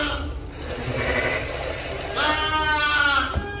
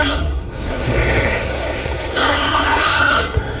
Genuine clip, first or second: first